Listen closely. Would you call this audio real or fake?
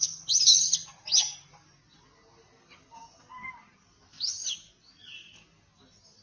real